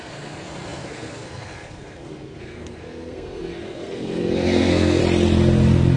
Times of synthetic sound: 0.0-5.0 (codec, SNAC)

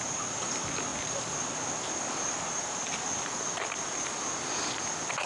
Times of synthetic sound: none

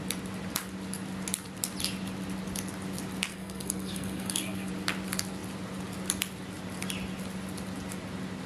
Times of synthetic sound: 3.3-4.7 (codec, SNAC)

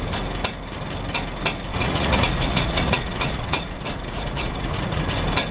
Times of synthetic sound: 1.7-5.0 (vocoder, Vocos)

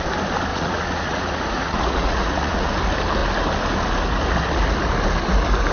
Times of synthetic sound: 0.5-2.7 (vocoder, Vocos)